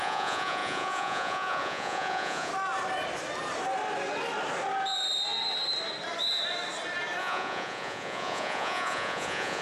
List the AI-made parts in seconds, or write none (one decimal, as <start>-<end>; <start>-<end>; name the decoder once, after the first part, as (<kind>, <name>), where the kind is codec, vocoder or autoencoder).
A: 0.0-2.5 (vocoder, Vocos); 7.2-9.6